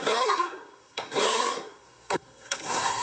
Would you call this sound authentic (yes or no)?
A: no